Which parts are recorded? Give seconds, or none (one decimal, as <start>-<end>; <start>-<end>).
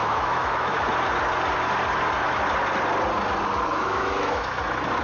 0.8-3.7; 4.6-5.0